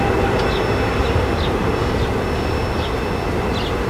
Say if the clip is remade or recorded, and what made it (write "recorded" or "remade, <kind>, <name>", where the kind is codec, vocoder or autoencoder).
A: recorded